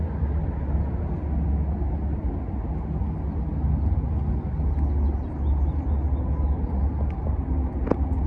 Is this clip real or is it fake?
real